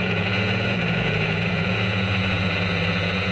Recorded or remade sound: remade